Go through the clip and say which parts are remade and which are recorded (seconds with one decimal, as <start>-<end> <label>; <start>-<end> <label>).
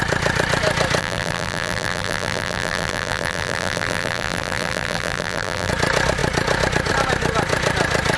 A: 0.0-1.0 recorded; 1.0-5.7 remade; 5.7-8.2 recorded